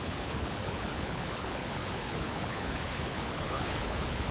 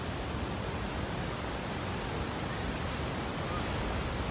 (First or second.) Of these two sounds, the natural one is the second